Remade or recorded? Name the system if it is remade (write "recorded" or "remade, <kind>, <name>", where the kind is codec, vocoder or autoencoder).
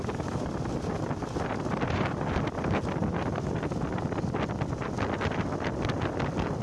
recorded